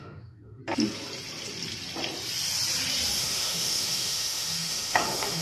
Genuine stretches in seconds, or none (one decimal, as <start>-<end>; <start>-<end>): 0.6-3.2